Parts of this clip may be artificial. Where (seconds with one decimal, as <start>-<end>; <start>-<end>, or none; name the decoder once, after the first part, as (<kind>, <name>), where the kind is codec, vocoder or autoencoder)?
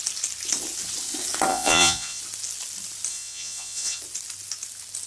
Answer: 1.5-2.2 (vocoder, Vocos); 3.1-4.0